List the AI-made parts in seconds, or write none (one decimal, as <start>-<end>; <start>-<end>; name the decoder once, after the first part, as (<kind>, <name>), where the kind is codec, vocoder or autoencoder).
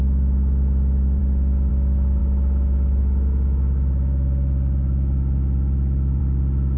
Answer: none